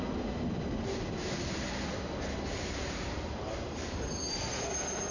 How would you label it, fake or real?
real